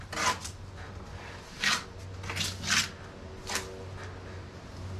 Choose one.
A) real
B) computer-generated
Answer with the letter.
A